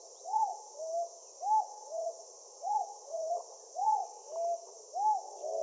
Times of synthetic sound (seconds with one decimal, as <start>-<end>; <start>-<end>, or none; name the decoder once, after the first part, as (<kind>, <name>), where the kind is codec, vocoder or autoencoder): 0.0-0.5 (vocoder, Vocos); 1.6-4.0